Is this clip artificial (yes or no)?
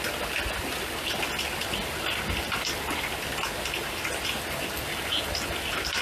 no